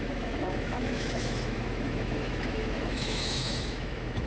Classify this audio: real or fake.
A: fake